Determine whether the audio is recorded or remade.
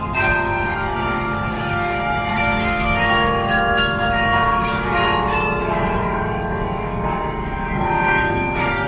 remade